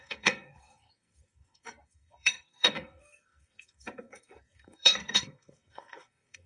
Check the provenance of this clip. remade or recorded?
remade